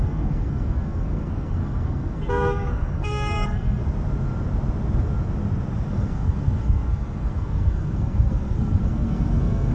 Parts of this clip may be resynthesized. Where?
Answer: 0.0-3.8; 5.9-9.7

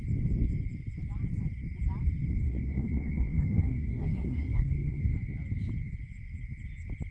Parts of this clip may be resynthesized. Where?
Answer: 2.4-5.0

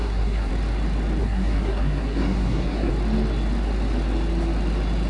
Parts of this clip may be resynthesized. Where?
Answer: 0.0-0.5; 1.2-2.9

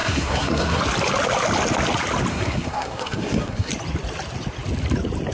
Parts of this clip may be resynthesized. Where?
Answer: 0.0-0.8; 2.3-3.7

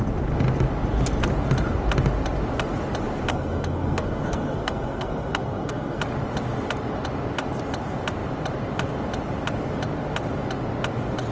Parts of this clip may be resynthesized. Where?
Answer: 3.3-6.0

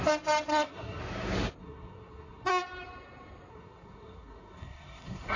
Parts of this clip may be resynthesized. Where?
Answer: 0.5-1.0; 1.6-2.5; 3.5-5.4